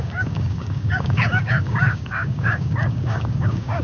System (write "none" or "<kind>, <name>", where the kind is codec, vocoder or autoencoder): codec, DAC